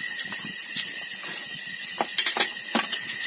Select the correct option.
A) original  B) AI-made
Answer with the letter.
A